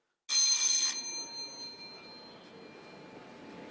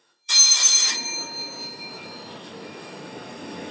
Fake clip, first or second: second